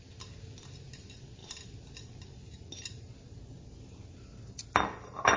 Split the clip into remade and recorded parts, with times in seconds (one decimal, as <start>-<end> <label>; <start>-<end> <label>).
0.0-5.4 recorded